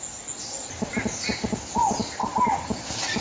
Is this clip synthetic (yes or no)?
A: no